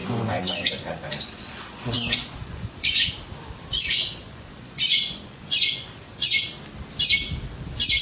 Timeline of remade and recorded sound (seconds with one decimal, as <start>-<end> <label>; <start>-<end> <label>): 0.0-3.1 remade; 3.1-3.7 recorded; 3.7-6.5 remade; 6.5-8.0 recorded